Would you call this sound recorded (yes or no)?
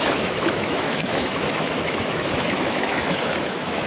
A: no